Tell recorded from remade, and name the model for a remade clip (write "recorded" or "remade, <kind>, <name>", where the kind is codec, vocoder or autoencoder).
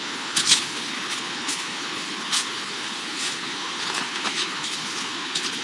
remade, codec, HILCodec